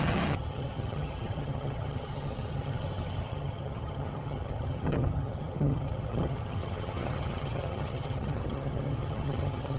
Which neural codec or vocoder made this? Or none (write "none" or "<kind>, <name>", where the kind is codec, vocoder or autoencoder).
vocoder, HiFi-GAN